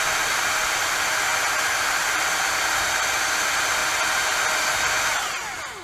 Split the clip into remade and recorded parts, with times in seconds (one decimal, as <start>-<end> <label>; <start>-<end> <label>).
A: 0.0-5.8 recorded